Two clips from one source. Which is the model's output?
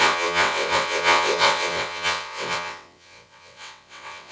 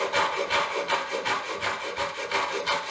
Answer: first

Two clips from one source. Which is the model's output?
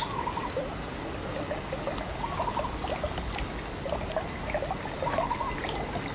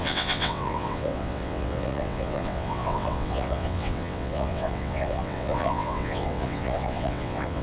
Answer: second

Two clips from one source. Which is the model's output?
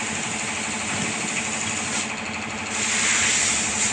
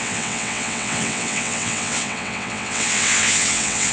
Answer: second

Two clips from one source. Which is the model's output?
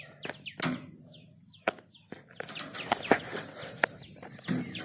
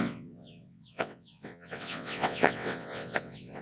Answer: second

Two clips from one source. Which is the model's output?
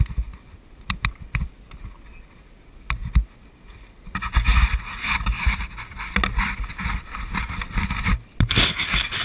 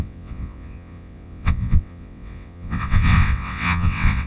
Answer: second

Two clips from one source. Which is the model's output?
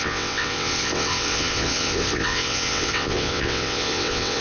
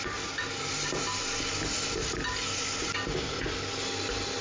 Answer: first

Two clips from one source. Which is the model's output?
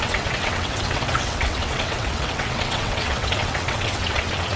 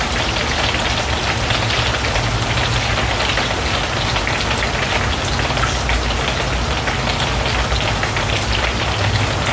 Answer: first